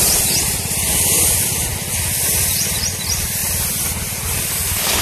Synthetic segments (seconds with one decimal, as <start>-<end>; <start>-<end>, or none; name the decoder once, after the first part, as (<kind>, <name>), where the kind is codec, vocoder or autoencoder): none